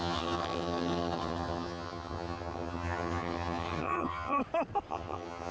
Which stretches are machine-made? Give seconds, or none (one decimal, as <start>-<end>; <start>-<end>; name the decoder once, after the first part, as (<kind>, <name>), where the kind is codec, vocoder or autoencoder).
0.0-4.4 (vocoder, HiFi-GAN); 4.9-5.5